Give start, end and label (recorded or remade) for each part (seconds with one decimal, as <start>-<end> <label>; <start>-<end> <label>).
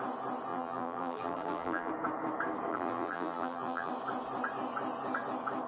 0.0-0.5 recorded; 0.5-1.9 remade; 1.9-2.7 recorded; 2.7-3.9 remade; 3.9-5.7 recorded